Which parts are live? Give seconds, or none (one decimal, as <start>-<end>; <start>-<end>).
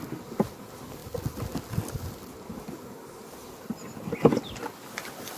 0.0-5.4